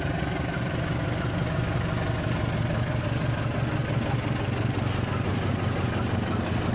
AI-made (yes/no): no